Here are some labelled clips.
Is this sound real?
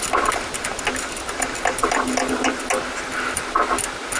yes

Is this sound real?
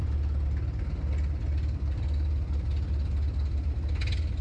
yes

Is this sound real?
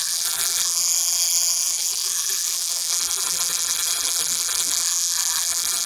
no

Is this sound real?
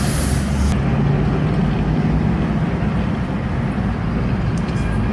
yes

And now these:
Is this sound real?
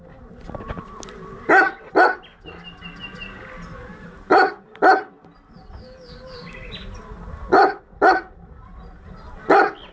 yes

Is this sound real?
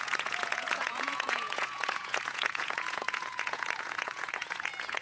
no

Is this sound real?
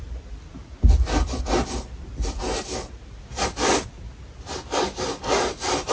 yes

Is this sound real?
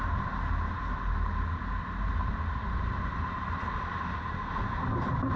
yes